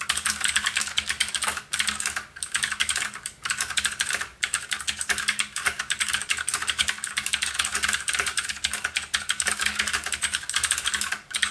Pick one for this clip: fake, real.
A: fake